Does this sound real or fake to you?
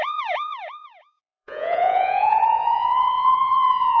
fake